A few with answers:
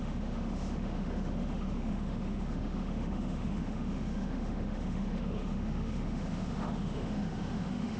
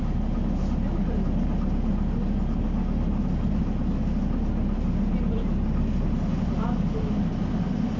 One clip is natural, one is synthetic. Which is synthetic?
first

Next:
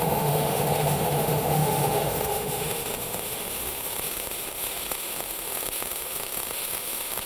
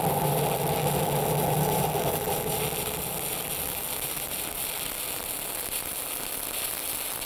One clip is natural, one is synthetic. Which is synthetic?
first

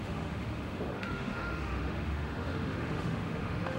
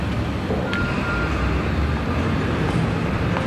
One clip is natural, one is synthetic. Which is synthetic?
first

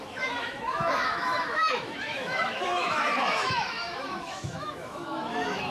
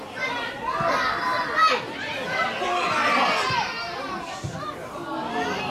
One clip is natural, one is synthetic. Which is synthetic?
first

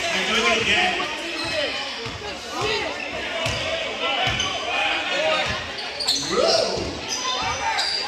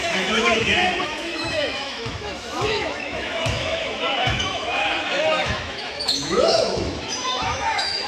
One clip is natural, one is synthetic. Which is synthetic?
second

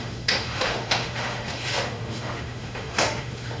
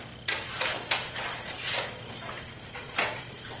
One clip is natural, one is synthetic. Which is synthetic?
first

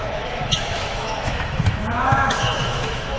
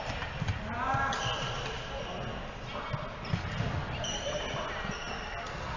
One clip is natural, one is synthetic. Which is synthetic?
first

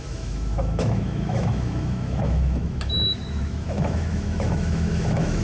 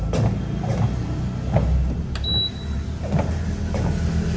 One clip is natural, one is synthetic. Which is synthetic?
first